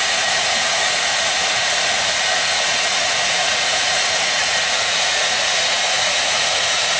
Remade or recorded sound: remade